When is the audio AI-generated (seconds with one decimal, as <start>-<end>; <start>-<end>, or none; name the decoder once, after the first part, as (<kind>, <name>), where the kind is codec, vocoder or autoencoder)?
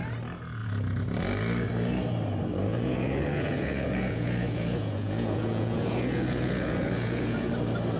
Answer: 2.7-7.5 (vocoder, Vocos)